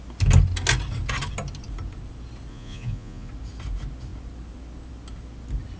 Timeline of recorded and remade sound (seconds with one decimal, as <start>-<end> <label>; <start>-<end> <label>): 0.0-2.5 recorded; 2.5-3.3 remade; 3.3-5.8 recorded